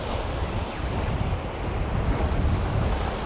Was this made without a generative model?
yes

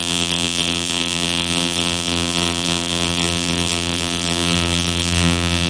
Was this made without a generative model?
no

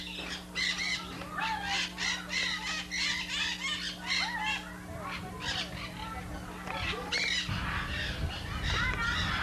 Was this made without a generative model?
yes